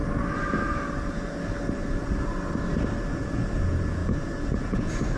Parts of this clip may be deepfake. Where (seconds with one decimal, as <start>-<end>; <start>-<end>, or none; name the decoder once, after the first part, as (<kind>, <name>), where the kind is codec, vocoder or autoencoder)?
3.1-5.2 (vocoder, Vocos)